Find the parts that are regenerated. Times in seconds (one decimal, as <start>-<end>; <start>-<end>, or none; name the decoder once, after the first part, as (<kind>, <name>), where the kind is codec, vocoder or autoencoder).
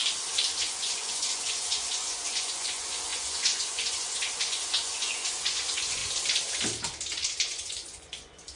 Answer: 0.6-6.0 (vocoder, Vocos); 7.4-8.6